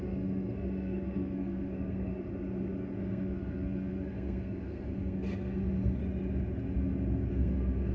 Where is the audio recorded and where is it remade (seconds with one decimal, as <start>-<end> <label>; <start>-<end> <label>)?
0.0-2.1 remade; 2.1-3.0 recorded; 3.0-6.0 remade; 6.0-7.3 recorded; 7.3-7.9 remade